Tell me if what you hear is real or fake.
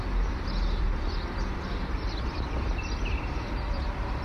fake